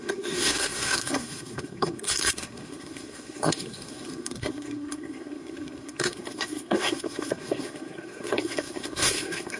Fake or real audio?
fake